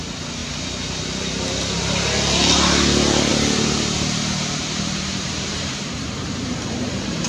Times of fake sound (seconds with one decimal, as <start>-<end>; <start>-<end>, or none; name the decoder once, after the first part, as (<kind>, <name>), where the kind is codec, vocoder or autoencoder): 3.3-7.3 (vocoder, BigVGAN v2)